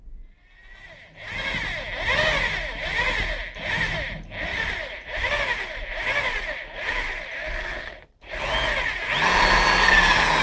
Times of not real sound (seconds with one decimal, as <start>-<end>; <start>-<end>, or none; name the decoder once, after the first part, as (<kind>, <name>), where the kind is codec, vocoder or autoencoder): 4.5-8.4 (vocoder, BigVGAN v2)